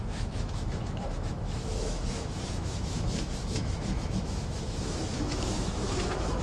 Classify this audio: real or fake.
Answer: fake